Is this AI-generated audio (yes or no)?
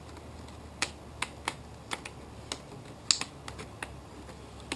no